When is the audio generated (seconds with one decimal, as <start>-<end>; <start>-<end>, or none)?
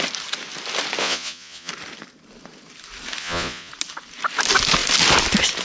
1.0-1.7; 3.2-3.7